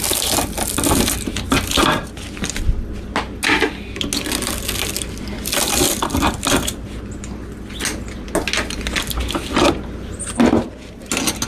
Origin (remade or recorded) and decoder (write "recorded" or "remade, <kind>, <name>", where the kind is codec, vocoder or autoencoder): recorded